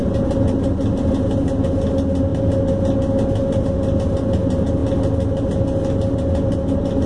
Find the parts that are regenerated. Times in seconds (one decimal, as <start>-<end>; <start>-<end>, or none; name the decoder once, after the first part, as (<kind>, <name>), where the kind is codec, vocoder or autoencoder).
none